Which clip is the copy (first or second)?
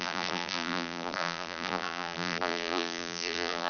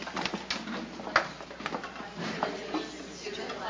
first